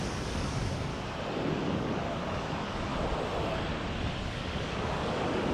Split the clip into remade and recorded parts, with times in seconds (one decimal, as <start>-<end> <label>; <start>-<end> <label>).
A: 0.0-0.9 remade; 0.9-1.5 recorded; 1.5-2.9 remade; 2.9-4.2 recorded; 4.2-5.5 remade